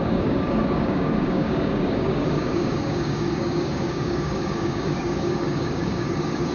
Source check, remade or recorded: remade